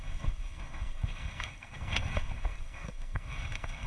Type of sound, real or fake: fake